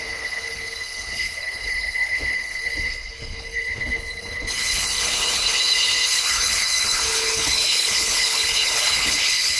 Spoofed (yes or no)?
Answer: yes